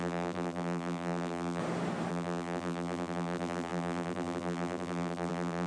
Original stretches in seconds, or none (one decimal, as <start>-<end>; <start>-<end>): 1.6-2.1